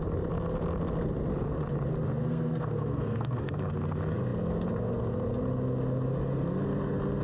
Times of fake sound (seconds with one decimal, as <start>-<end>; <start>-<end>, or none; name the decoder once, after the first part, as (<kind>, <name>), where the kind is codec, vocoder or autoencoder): 2.2-3.7 (codec, SNAC)